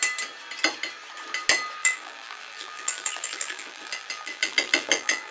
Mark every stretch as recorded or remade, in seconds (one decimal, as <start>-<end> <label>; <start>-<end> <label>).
0.0-1.8 recorded; 1.8-5.3 remade